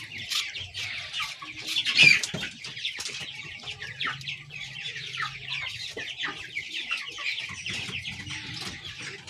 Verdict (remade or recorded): recorded